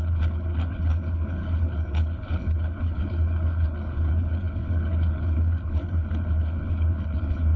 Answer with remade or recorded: remade